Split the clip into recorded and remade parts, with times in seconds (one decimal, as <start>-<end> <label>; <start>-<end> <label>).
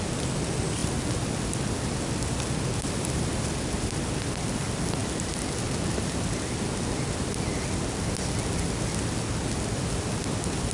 0.0-10.7 recorded